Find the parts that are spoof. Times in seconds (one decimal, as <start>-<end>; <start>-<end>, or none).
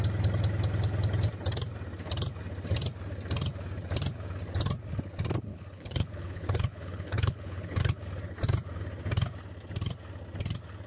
5.5-7.8